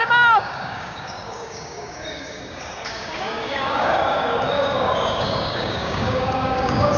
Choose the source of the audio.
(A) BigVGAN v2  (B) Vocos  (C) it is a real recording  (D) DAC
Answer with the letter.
D